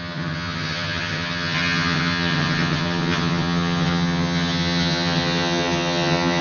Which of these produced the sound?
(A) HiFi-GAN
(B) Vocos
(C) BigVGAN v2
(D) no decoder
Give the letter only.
A